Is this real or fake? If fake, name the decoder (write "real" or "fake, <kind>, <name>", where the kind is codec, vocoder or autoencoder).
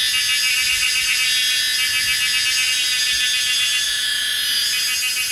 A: real